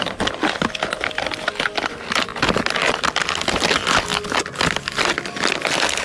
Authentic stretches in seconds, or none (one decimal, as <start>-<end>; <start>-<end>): 0.0-6.0